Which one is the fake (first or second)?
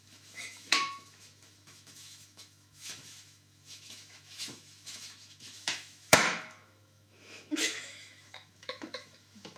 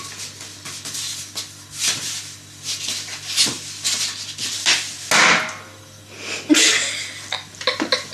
first